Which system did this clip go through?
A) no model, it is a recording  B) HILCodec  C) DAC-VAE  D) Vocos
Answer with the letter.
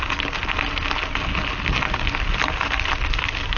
A